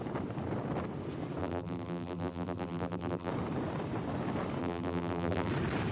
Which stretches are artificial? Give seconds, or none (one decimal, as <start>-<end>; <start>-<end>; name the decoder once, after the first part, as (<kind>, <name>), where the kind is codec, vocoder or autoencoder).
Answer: 1.4-3.3 (vocoder, BigVGAN v2); 4.6-5.5